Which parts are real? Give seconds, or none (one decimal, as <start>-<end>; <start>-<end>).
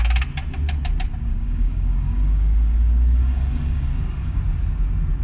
0.0-1.3; 4.4-5.2